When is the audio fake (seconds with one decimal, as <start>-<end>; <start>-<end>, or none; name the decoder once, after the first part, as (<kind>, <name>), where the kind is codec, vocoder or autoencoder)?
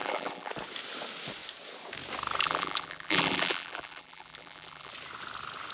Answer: 0.0-0.5 (vocoder, BigVGAN v2); 2.4-4.9